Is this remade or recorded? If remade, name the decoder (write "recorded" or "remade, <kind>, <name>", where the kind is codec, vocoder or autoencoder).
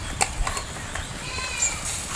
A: recorded